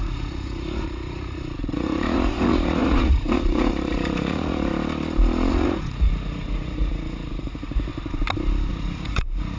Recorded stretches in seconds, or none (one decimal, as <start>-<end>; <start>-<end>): 4.7-5.5; 7.9-8.7